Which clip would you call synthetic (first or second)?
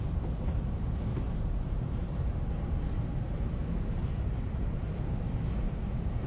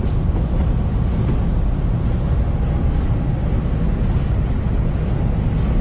first